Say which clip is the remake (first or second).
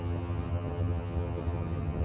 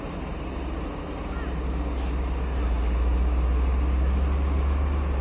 first